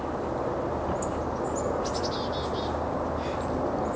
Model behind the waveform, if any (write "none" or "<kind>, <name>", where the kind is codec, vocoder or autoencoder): none